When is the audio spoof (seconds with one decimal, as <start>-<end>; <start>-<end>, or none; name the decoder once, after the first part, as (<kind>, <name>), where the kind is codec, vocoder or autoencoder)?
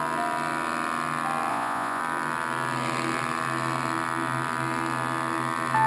1.5-2.0 (vocoder, Vocos)